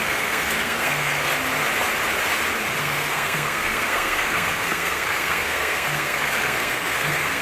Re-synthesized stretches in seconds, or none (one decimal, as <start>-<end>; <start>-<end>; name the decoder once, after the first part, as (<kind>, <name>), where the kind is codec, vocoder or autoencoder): 0.0-1.3 (codec, SNAC); 2.8-7.4